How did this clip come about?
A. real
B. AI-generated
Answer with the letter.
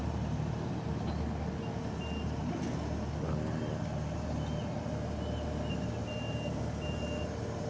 A